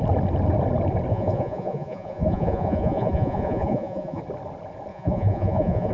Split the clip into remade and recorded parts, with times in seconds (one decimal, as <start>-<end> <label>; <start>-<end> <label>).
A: 0.0-1.1 recorded; 1.1-4.2 remade; 4.2-4.9 recorded; 4.9-5.9 remade